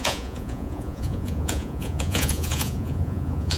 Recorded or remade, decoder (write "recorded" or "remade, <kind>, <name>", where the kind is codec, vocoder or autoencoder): remade, vocoder, Vocos